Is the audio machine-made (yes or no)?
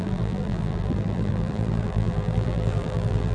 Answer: yes